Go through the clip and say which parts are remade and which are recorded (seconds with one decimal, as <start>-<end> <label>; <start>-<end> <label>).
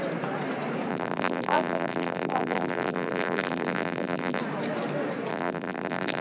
0.0-0.9 recorded; 0.9-4.4 remade; 4.4-5.3 recorded; 5.3-6.2 remade